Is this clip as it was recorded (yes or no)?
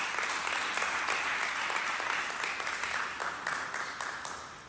yes